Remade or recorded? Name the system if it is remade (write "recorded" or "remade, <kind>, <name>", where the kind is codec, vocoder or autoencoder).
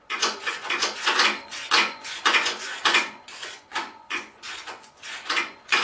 remade, vocoder, Vocos